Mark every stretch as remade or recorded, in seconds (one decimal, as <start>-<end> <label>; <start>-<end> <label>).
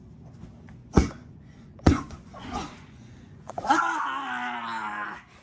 0.0-0.8 recorded; 0.8-3.8 remade; 3.8-5.4 recorded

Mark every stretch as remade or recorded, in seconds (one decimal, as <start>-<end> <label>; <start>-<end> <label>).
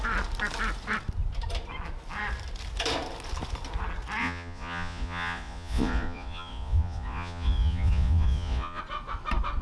0.0-4.2 recorded; 4.2-8.8 remade; 8.8-9.6 recorded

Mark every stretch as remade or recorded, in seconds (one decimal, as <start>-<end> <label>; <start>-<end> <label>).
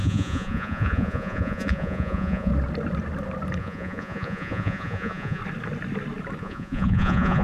0.0-2.5 remade; 2.5-3.6 recorded; 3.6-5.4 remade; 5.4-6.4 recorded; 6.4-7.4 remade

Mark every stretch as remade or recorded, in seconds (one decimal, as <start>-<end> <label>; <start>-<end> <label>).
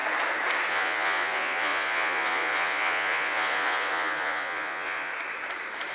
0.0-0.7 recorded; 0.7-5.1 remade; 5.1-5.9 recorded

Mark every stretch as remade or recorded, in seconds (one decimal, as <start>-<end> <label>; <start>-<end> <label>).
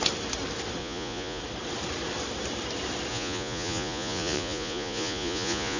0.0-0.8 recorded; 0.8-1.4 remade; 1.4-3.1 recorded; 3.1-5.8 remade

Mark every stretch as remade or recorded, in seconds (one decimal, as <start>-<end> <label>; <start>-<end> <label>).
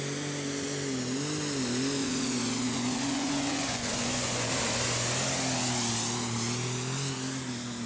0.0-2.0 recorded; 2.0-4.5 remade; 4.5-7.9 recorded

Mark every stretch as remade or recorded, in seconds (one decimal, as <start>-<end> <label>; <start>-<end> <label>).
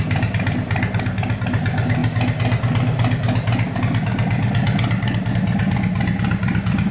0.0-6.9 recorded